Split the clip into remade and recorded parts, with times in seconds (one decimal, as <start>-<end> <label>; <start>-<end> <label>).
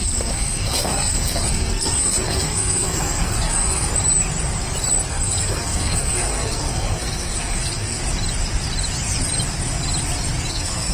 0.0-3.9 remade; 3.9-5.1 recorded; 5.1-8.0 remade; 8.0-10.5 recorded; 10.5-10.9 remade